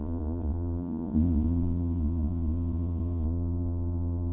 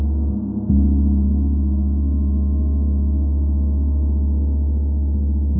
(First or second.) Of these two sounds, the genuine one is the second